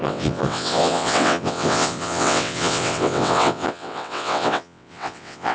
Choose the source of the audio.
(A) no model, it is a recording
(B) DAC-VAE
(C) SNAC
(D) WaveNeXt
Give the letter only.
D